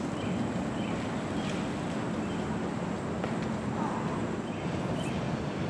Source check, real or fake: real